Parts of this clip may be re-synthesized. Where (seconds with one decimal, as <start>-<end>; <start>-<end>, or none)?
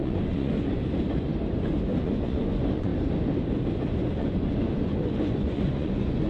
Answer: 0.0-0.8; 2.0-2.9; 4.1-6.3